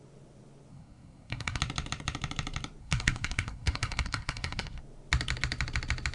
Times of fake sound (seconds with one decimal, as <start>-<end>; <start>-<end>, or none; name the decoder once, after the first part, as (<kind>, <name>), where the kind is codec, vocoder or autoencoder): 0.7-1.6 (codec, SNAC); 2.8-4.8